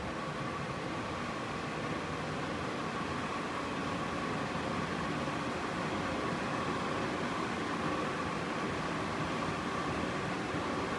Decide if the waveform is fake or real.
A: real